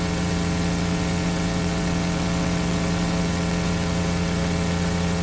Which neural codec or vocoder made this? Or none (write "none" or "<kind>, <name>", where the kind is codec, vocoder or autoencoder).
vocoder, WaveNeXt